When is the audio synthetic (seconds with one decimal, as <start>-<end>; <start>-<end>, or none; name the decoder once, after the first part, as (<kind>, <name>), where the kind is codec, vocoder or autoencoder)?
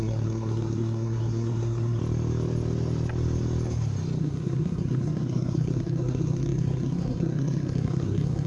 0.0-2.0 (codec, SNAC); 4.2-8.5